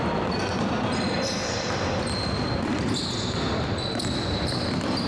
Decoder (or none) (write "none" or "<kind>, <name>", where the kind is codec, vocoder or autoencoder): none